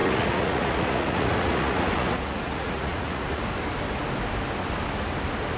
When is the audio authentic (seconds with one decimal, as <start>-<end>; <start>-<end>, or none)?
3.4-5.6